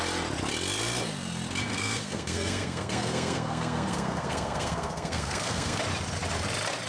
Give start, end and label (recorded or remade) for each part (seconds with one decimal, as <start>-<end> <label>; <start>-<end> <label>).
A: 0.0-1.7 recorded; 1.7-5.8 remade; 5.8-6.9 recorded